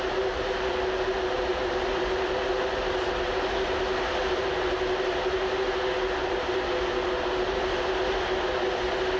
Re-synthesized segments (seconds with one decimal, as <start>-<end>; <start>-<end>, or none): 1.5-2.3